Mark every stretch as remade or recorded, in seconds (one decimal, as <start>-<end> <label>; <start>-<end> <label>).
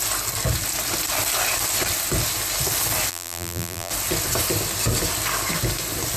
0.0-3.1 recorded; 3.1-3.9 remade; 3.9-6.2 recorded